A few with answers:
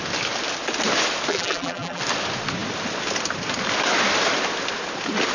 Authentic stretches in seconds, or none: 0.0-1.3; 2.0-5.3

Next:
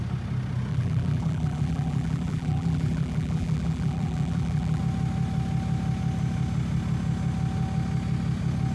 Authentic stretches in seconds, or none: 0.0-0.7; 4.8-8.7

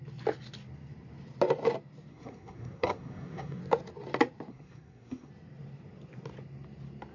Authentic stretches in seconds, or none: 0.0-2.1; 3.6-4.5; 5.3-7.1

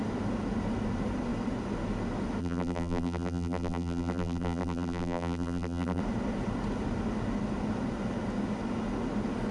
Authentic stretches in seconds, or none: 0.0-2.4; 6.0-9.5

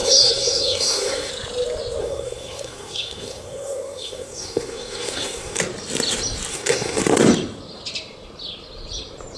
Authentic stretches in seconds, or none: 1.3-2.0; 5.6-6.5; 7.0-9.4

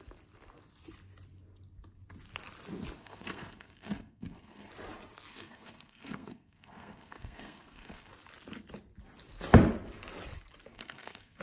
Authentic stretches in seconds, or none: 0.0-3.0; 4.7-5.3; 8.1-10.7

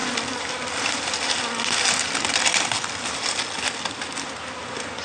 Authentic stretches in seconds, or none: 0.0-5.0

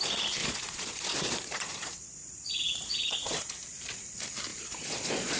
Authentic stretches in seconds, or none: 0.0-0.4; 3.5-4.5